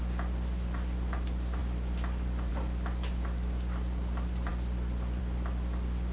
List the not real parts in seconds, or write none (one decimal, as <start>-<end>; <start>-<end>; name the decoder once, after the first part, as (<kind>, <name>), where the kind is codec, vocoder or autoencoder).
none